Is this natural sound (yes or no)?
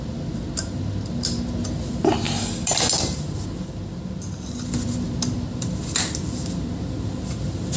yes